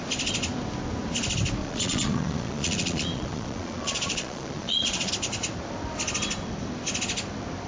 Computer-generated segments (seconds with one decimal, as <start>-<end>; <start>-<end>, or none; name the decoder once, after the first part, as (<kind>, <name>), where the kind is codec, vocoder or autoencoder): 1.6-5.1 (vocoder, Vocos)